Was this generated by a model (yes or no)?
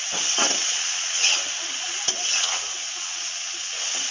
yes